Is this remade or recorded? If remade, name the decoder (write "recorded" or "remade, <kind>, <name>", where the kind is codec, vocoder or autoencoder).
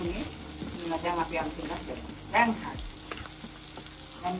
recorded